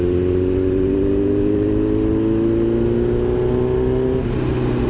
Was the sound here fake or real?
real